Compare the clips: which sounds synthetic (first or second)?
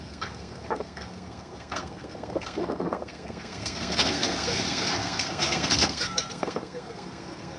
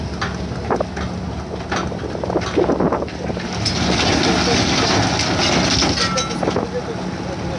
first